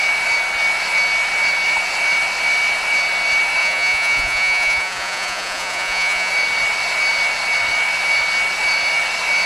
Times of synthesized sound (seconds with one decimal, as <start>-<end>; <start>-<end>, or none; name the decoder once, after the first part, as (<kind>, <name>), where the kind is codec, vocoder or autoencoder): 3.6-6.3 (vocoder, Vocos)